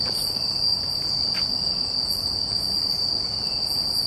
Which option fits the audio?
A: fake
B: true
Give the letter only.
B